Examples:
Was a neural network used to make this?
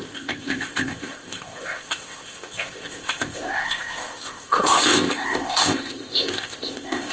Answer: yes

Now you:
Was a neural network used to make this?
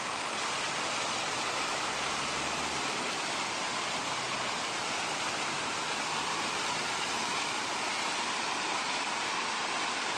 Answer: yes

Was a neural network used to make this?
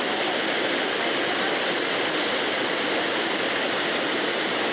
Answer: no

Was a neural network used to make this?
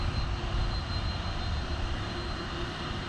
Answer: yes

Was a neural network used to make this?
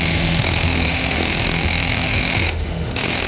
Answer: yes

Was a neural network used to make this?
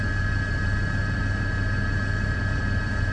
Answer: yes